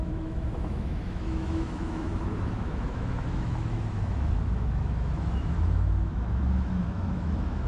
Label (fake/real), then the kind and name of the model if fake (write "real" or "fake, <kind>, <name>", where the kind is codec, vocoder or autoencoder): fake, autoencoder, DAC-VAE